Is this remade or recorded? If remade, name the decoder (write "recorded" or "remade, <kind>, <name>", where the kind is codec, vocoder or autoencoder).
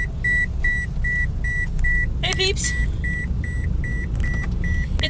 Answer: recorded